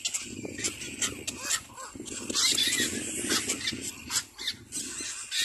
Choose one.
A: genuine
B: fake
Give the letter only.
A